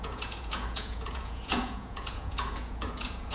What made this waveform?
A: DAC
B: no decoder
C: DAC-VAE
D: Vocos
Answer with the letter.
D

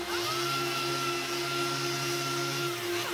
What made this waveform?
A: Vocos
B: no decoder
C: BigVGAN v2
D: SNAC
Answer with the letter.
B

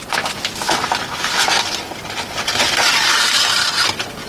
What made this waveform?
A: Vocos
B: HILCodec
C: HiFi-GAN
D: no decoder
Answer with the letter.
D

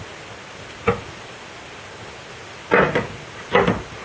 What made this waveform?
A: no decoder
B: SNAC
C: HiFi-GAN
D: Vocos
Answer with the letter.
A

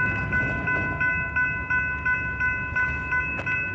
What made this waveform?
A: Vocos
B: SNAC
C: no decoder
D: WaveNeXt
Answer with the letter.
C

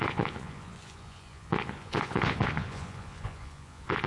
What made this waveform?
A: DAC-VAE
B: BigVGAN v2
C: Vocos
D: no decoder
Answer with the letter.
C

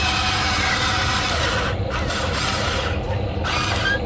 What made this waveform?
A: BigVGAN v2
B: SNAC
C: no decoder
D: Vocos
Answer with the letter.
C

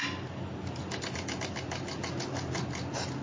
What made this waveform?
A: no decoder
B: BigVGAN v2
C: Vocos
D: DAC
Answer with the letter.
A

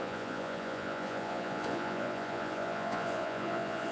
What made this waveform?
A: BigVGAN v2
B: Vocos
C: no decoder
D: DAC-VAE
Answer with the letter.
B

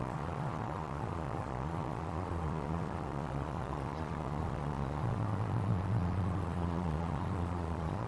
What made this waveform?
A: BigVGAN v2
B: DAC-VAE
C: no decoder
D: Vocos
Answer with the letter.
D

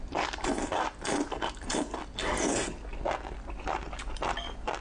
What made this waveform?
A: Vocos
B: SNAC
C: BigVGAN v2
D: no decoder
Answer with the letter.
D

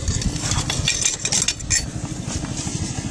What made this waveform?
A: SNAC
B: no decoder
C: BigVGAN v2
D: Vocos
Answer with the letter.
B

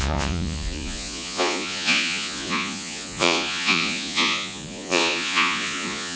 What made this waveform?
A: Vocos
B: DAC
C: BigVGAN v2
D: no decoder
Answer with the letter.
A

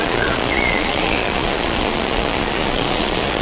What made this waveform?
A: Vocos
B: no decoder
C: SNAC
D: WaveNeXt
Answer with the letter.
A